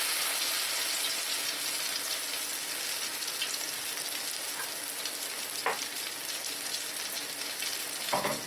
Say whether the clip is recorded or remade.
recorded